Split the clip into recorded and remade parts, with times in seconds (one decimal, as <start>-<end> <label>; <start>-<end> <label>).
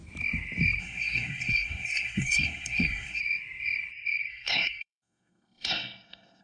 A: 0.0-0.8 recorded; 0.8-3.2 remade; 3.2-4.3 recorded; 4.3-6.4 remade